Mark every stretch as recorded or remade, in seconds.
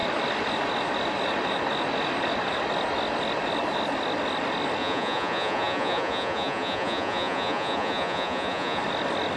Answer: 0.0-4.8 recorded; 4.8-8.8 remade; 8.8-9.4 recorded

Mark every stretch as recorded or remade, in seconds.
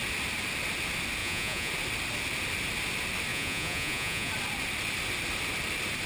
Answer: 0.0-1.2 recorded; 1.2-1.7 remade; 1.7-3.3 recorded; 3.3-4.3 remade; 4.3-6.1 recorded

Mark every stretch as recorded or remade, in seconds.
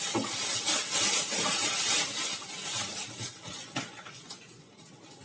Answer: 0.0-3.5 recorded; 3.5-4.7 remade; 4.7-5.2 recorded